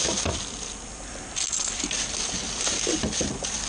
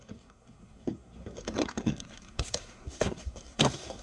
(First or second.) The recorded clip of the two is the first